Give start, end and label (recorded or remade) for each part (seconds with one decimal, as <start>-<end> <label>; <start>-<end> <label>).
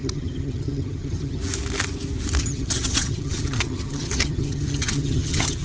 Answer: 0.0-1.4 remade; 1.4-2.4 recorded; 2.4-5.6 remade